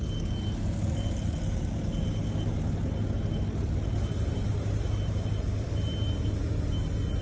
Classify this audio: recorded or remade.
recorded